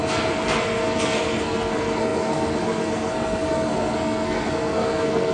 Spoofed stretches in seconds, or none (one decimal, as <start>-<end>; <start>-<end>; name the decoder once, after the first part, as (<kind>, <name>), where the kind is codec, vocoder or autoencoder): 0.0-5.3 (codec, SNAC)